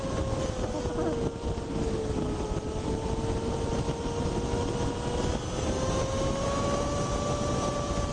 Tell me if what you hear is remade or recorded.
recorded